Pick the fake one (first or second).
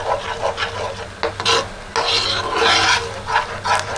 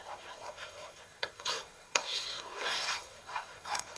second